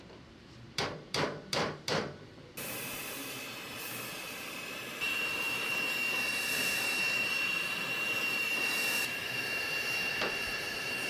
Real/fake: fake